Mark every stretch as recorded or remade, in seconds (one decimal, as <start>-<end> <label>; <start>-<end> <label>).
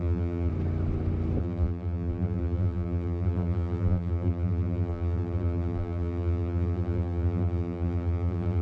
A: 0.0-0.5 remade; 0.5-1.4 recorded; 1.4-8.6 remade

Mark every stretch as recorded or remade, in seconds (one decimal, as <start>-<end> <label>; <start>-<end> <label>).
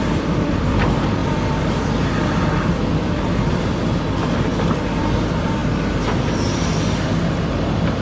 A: 0.0-4.5 remade; 4.5-5.0 recorded; 5.0-5.6 remade; 5.6-7.3 recorded; 7.3-8.0 remade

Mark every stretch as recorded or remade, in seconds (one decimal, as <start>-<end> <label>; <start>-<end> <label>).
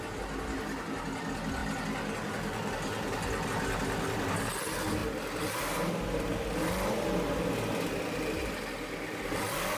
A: 0.0-9.8 recorded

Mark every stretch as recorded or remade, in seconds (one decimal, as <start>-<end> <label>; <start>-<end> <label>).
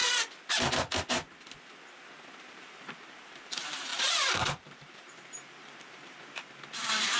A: 0.0-2.4 recorded; 2.4-7.2 remade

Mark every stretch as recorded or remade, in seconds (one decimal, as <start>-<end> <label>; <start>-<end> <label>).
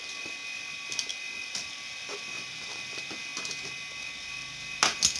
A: 0.0-0.4 remade; 0.4-1.5 recorded; 1.5-3.3 remade; 3.3-5.2 recorded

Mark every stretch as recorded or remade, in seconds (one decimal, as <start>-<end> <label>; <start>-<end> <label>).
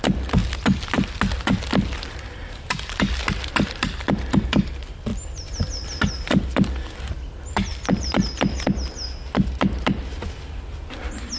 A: 0.0-7.7 recorded; 7.7-8.3 remade; 8.3-11.4 recorded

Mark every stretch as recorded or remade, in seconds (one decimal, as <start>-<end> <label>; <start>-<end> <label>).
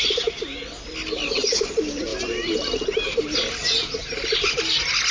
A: 0.0-2.1 recorded; 2.1-3.2 remade; 3.2-5.1 recorded